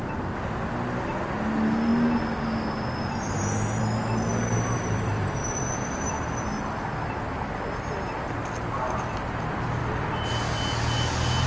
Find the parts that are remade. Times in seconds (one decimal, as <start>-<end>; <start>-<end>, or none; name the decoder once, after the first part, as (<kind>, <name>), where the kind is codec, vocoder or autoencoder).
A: 4.3-7.2 (vocoder, BigVGAN v2)